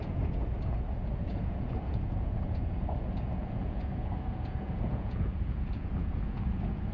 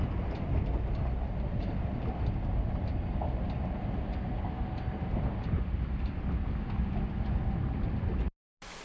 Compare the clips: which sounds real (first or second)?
second